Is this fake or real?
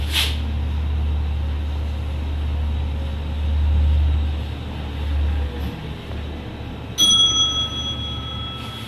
real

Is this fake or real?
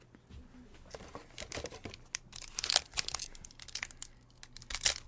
real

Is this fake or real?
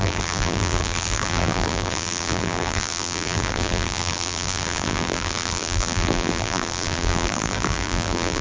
fake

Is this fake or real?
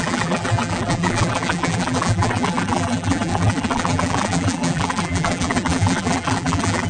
fake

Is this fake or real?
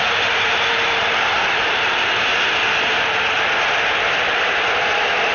fake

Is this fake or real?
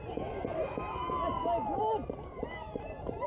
real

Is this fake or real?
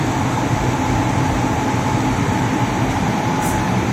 fake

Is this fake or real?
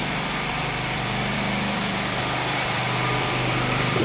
fake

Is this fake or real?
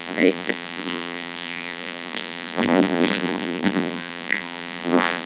fake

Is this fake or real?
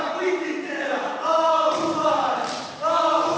fake